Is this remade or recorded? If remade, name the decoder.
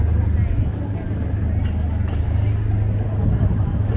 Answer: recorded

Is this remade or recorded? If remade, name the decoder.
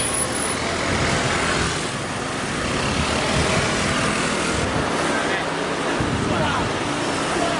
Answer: recorded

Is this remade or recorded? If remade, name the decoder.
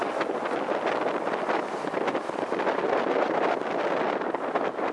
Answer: recorded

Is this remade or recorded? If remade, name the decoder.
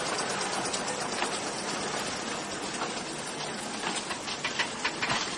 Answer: recorded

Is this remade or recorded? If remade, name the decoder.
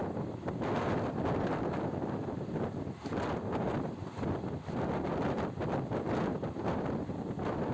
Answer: recorded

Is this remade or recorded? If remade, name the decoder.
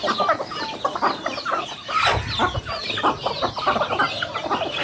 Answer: recorded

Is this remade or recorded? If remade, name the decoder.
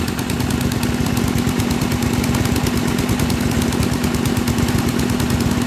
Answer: recorded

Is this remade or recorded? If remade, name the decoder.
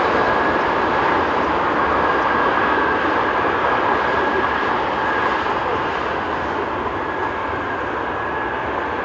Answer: recorded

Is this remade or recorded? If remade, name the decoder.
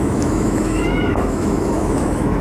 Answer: remade, autoencoder, DAC-VAE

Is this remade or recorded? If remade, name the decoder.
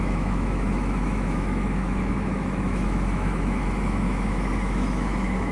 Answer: remade, autoencoder, DAC-VAE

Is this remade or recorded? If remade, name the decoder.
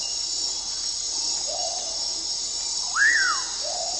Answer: recorded